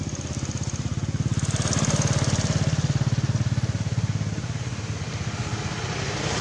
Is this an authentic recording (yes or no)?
yes